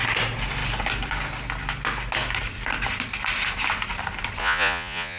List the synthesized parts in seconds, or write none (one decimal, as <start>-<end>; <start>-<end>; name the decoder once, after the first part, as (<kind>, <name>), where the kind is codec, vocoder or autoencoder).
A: 4.4-5.2 (vocoder, Vocos)